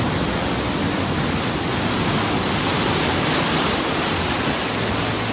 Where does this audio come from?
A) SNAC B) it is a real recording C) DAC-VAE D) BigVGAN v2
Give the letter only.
B